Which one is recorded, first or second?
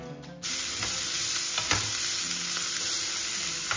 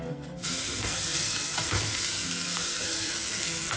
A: first